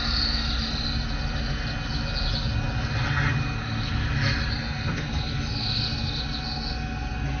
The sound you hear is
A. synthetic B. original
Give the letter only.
B